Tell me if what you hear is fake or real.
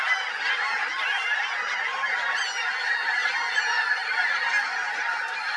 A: real